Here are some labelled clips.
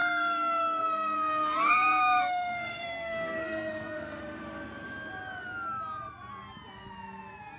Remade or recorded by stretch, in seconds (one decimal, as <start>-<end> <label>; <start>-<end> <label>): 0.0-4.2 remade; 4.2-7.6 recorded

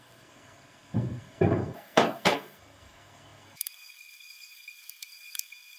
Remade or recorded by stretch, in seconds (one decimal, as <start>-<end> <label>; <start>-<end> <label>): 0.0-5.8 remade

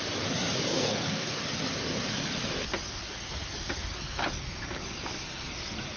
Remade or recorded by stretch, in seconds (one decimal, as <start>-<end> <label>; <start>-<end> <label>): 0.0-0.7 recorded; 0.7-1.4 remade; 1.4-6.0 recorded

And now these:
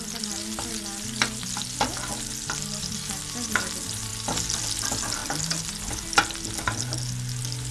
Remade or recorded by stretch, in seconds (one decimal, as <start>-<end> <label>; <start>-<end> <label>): 0.0-7.7 recorded

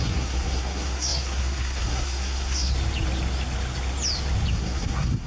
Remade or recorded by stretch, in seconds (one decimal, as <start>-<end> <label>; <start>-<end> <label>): 0.0-2.7 remade; 2.7-4.5 recorded; 4.5-5.3 remade

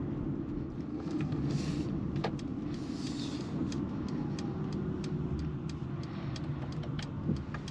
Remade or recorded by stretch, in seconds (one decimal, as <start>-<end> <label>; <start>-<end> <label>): 0.0-0.9 recorded; 0.9-1.4 remade; 1.4-7.7 recorded

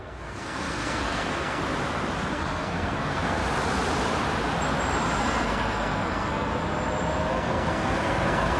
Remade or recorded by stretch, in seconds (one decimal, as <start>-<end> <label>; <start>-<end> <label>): 0.0-1.6 remade; 1.6-2.3 recorded; 2.3-3.4 remade; 3.4-5.2 recorded; 5.2-6.5 remade; 6.5-7.3 recorded; 7.3-8.6 remade